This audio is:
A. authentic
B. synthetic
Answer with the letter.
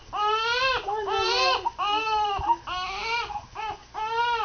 A